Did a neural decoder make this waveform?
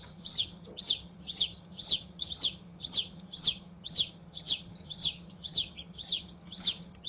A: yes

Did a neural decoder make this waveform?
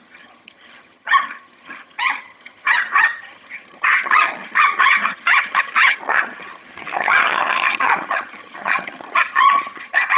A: yes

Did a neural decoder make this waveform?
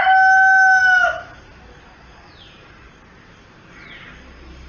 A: no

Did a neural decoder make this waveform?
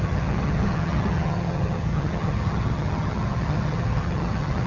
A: yes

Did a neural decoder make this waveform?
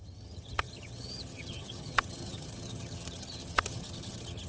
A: yes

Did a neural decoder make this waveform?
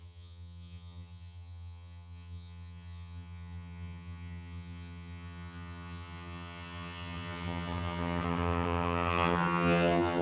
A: yes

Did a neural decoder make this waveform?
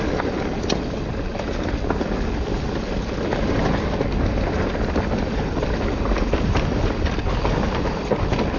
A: no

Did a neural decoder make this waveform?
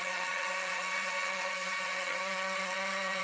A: yes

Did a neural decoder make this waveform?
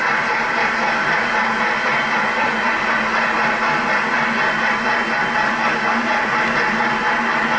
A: no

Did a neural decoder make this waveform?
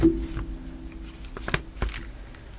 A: no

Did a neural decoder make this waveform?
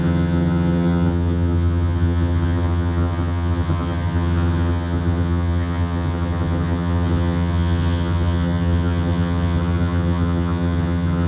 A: yes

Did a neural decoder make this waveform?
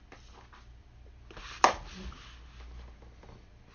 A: no